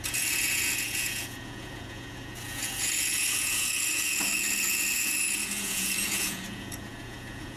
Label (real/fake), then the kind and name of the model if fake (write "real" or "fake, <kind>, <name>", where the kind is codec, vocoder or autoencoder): fake, vocoder, Vocos